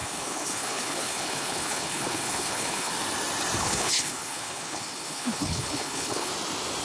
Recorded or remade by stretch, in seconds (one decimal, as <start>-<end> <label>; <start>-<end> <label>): 0.0-2.9 remade; 2.9-3.6 recorded; 3.6-6.3 remade; 6.3-6.8 recorded